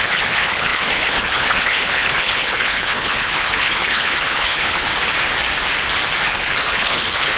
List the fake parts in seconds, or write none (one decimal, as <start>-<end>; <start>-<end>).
0.0-4.9; 6.2-7.4